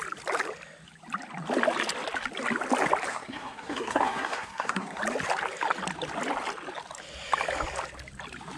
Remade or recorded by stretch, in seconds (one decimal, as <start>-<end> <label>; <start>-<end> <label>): 0.0-3.1 recorded; 3.1-5.0 remade; 5.0-8.6 recorded